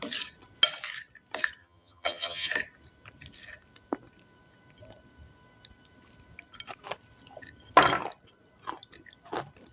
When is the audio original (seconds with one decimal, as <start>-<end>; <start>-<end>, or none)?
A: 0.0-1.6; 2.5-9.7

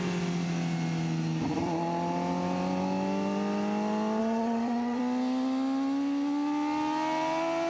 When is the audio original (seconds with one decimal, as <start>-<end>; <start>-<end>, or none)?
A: 0.0-4.2; 5.0-7.7

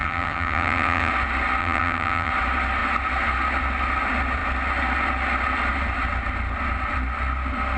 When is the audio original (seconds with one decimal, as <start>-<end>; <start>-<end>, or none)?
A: 1.1-1.6; 2.3-7.8

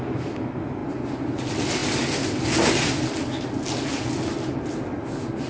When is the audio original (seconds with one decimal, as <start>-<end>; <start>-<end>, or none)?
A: 0.0-5.5